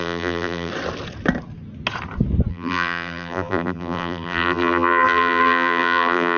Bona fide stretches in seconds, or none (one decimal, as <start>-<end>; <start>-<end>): 0.7-2.5

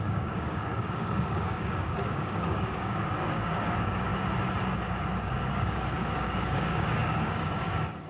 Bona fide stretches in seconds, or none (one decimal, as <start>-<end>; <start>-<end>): 4.1-5.2

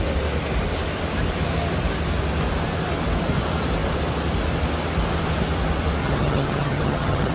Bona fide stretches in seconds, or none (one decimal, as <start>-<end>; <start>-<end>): 0.0-6.0

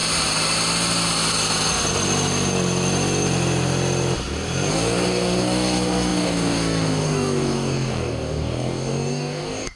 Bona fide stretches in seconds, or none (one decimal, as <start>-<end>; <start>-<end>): 0.0-4.7

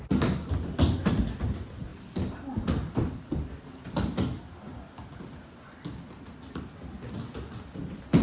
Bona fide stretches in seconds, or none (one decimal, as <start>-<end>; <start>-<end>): 0.0-8.2